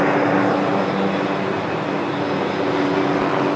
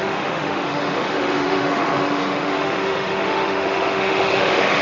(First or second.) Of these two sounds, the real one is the first